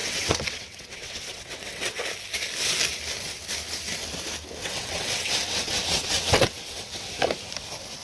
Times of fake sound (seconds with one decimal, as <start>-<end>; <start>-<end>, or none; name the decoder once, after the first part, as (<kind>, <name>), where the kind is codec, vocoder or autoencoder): 0.0-2.0 (vocoder, WaveNeXt); 4.6-7.1